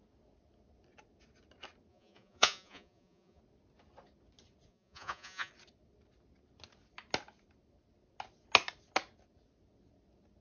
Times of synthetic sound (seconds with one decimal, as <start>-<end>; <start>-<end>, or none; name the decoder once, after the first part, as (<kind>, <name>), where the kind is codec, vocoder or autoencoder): 1.9-3.4 (vocoder, Vocos); 4.7-5.5